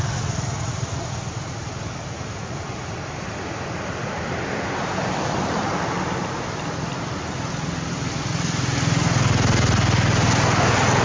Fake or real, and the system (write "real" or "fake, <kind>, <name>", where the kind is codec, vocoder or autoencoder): real